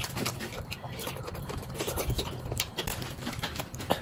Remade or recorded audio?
remade